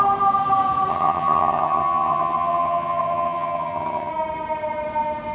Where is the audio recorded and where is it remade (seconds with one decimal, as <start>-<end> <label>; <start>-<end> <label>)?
0.0-0.9 recorded; 0.9-4.1 remade; 4.1-5.3 recorded